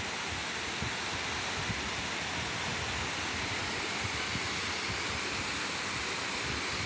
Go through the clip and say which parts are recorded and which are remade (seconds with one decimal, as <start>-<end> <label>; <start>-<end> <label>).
0.0-6.9 recorded